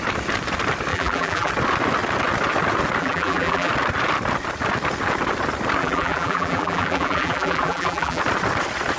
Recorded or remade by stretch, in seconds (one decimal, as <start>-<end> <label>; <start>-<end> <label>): 0.0-0.9 recorded; 0.9-1.5 remade; 1.5-3.0 recorded; 3.0-3.7 remade; 3.7-5.8 recorded; 5.8-8.2 remade; 8.2-9.0 recorded